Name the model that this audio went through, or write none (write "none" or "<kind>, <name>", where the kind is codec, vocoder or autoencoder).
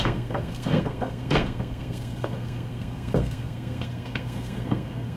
codec, SNAC